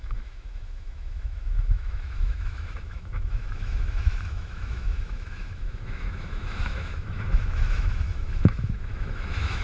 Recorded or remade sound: remade